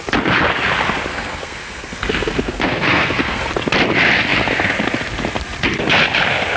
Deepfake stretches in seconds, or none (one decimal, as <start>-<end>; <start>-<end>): 1.1-3.5